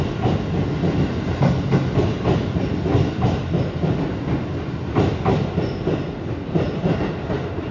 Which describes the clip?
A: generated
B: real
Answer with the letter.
B